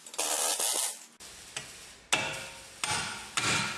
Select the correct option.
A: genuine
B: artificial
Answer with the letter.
A